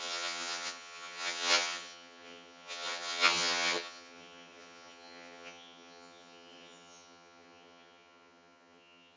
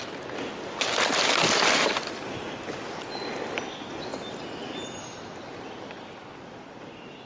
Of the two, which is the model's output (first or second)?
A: first